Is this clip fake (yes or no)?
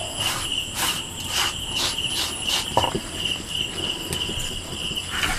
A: yes